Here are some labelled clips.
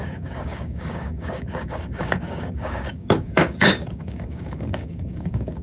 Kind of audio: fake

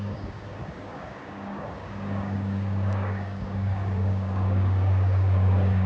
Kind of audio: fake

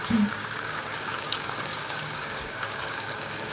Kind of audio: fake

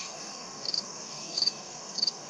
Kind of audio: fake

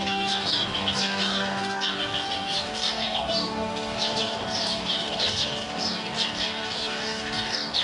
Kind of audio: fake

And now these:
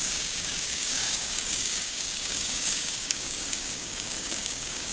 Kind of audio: fake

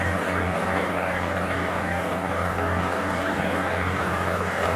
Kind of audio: fake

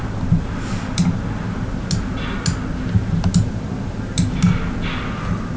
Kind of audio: real